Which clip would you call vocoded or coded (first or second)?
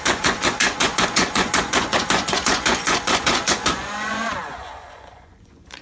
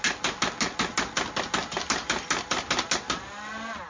first